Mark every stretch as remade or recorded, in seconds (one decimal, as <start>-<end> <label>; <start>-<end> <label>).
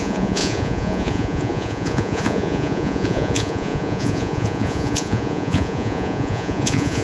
0.0-7.0 remade